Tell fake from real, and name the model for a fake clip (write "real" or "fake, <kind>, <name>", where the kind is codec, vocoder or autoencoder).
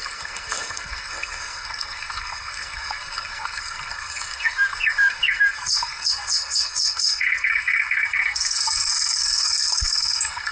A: fake, codec, SNAC